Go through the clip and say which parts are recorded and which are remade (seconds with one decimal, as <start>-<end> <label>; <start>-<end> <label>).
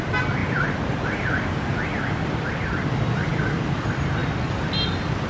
0.0-0.4 recorded; 0.4-2.0 remade; 2.0-3.3 recorded; 3.3-3.8 remade; 3.8-5.3 recorded